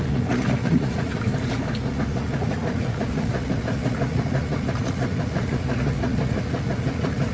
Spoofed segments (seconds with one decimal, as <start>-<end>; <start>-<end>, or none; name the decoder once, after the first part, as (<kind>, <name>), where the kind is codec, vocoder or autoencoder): 0.0-1.3 (vocoder, Vocos); 1.9-7.3